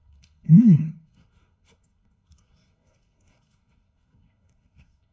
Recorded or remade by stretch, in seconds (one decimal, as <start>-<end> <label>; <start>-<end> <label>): 0.0-5.1 remade